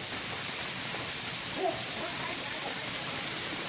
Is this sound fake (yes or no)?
yes